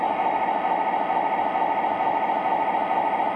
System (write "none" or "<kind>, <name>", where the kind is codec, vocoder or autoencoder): none